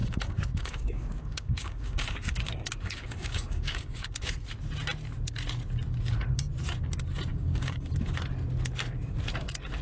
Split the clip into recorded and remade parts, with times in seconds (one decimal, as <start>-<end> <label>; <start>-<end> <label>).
0.0-4.3 remade; 4.3-7.3 recorded; 7.3-7.9 remade; 7.9-9.8 recorded